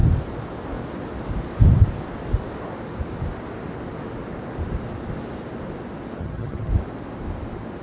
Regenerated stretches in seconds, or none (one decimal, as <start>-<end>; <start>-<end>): 6.2-6.7